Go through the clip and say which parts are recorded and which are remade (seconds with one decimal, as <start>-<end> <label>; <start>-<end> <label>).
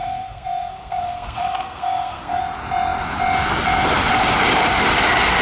0.0-2.4 remade; 2.4-5.4 recorded